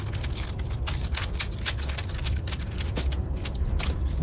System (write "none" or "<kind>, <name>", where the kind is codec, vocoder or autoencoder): vocoder, BigVGAN v2